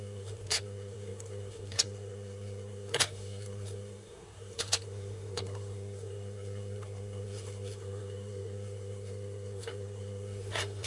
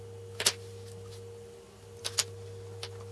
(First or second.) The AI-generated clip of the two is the first